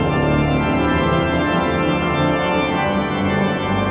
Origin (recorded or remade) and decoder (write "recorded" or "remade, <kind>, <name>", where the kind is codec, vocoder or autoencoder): recorded